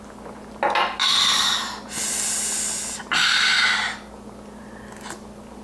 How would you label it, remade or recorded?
recorded